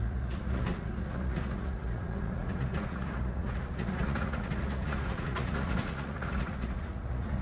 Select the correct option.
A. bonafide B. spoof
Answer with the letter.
B